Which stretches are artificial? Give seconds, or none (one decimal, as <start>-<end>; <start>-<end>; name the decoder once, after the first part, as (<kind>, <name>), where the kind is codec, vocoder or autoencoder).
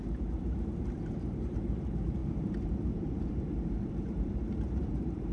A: 0.0-5.3 (vocoder, BigVGAN v2)